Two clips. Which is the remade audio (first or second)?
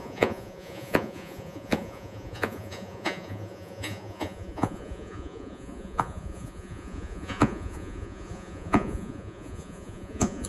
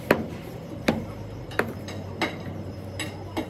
first